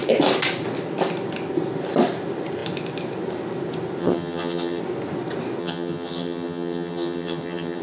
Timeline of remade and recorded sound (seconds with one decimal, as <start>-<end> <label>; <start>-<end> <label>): 0.0-4.0 recorded; 4.0-4.8 remade; 4.8-5.6 recorded; 5.6-7.8 remade

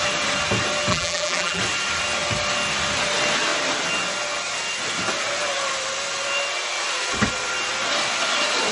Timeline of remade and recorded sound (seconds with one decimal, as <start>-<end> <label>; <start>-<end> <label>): 0.0-0.9 recorded; 0.9-1.6 remade; 1.6-8.7 recorded

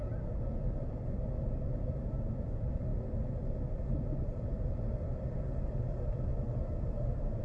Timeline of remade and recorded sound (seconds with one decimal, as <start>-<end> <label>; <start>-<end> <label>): 0.0-7.4 recorded

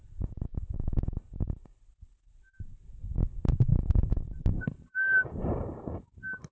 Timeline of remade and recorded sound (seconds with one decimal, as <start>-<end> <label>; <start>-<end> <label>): 0.0-0.5 recorded; 0.5-1.8 remade; 1.8-4.0 recorded; 4.0-5.6 remade; 5.6-6.5 recorded